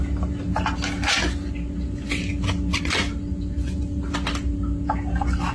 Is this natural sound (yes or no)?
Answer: yes